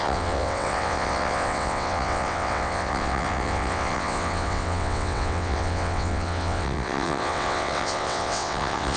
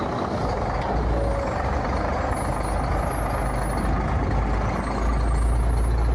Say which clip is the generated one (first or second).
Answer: first